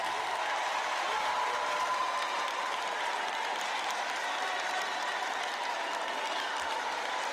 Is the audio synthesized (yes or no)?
no